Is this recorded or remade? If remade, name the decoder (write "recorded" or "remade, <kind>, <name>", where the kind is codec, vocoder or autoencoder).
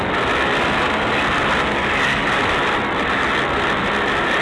recorded